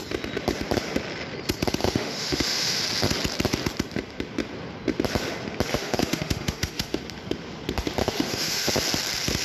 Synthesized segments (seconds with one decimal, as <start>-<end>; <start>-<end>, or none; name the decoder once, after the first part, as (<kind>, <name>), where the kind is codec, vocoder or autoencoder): 1.8-2.8 (autoencoder, DAC-VAE); 5.7-7.0; 8.0-8.7